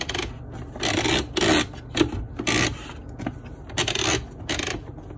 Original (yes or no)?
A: yes